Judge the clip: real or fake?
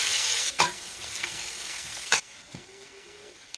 fake